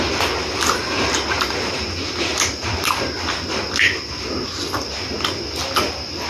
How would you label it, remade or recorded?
recorded